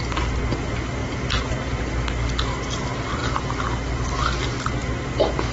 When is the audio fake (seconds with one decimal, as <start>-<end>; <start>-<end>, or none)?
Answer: none